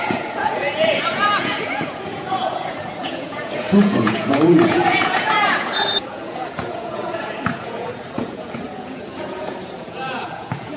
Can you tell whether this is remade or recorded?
remade